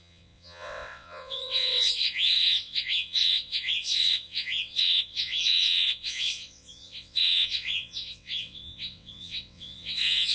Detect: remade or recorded remade